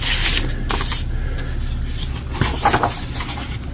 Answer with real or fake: real